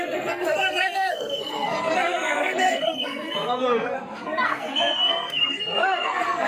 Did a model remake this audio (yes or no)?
yes